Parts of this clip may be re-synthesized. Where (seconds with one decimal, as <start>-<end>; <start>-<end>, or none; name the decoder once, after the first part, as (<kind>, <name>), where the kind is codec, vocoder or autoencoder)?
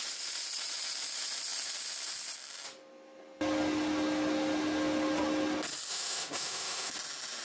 5.9-6.9 (autoencoder, DAC-VAE)